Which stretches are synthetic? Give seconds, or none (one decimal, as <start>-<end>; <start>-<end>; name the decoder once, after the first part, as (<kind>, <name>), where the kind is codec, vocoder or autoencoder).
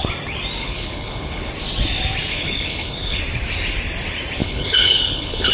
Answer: 0.6-1.5 (codec, HILCodec); 2.3-3.2; 4.4-5.5